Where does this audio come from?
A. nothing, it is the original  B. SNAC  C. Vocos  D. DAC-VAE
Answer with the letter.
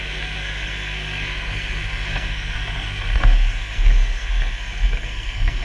B